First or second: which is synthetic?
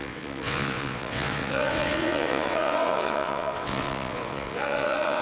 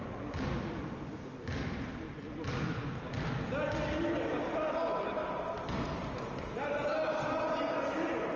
first